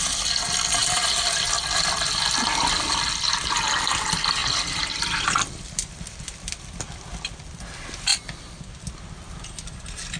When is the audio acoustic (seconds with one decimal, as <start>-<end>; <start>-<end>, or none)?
0.0-0.8; 2.4-4.4; 6.8-8.1; 8.7-10.2